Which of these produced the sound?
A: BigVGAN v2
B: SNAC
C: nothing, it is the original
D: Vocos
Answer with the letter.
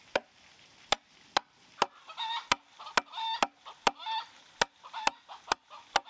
C